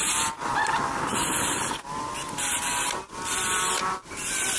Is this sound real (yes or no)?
yes